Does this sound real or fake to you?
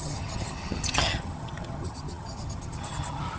fake